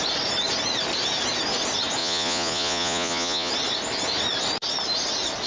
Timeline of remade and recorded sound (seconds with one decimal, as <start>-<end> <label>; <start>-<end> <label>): 0.0-2.0 recorded; 2.0-3.5 remade; 3.5-5.5 recorded